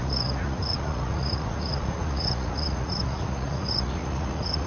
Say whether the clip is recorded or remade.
remade